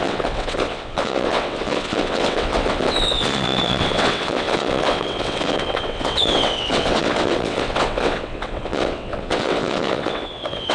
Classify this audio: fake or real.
fake